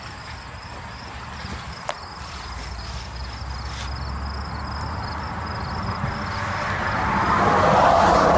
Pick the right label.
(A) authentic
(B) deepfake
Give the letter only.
A